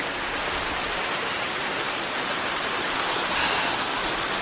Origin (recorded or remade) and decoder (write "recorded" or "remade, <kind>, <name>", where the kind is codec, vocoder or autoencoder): recorded